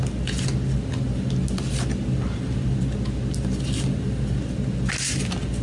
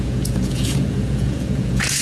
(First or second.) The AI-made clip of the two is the second